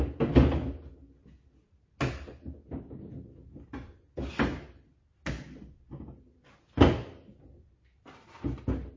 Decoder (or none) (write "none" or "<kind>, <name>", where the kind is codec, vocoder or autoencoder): none